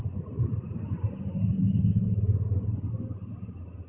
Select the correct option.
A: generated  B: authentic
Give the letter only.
B